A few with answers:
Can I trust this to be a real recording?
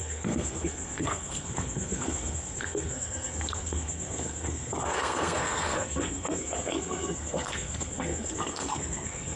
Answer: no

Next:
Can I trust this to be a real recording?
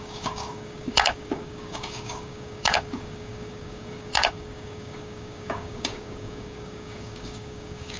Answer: no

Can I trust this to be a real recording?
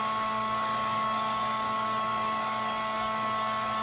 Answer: no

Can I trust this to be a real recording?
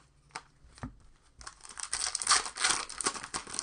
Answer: yes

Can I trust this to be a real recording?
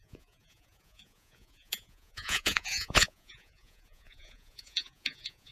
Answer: no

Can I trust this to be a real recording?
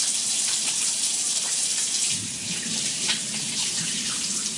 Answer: no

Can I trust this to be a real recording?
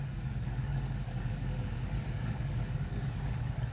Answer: no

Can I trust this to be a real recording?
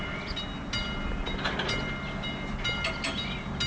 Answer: yes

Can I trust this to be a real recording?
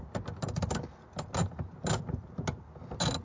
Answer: yes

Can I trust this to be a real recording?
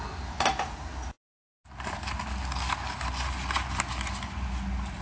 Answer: yes